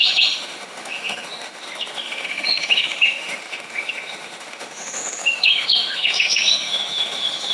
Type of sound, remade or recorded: remade